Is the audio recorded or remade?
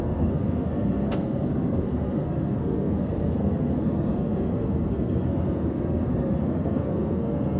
remade